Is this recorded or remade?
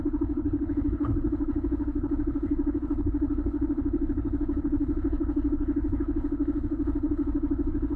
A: remade